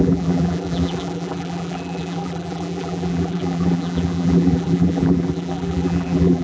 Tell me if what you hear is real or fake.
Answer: fake